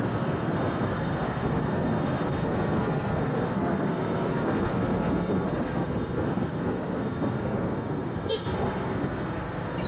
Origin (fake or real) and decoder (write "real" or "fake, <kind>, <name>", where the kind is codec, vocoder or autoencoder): fake, codec, SNAC